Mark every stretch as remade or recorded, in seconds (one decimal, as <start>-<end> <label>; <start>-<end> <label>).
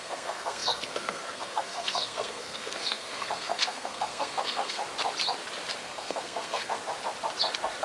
0.0-4.8 remade; 4.8-5.8 recorded; 5.8-6.8 remade; 6.8-7.8 recorded